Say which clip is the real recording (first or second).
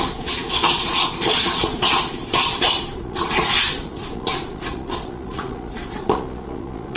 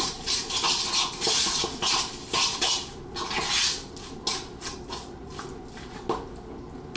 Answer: second